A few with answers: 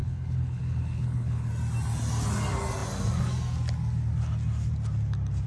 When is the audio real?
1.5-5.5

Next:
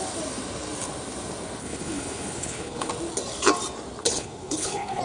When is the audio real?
0.0-1.6; 2.9-4.0